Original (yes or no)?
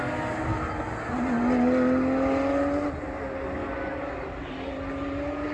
yes